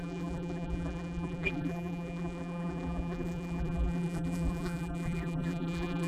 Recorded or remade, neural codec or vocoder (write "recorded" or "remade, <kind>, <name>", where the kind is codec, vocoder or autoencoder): remade, vocoder, BigVGAN v2